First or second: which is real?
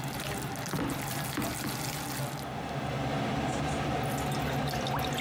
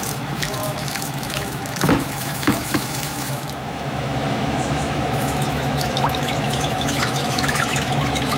first